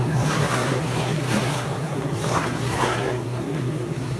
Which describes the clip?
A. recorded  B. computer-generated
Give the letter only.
B